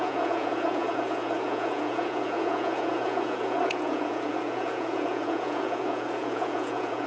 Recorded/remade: remade